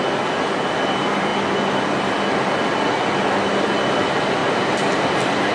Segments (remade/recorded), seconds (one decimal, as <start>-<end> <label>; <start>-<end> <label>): 0.0-5.5 recorded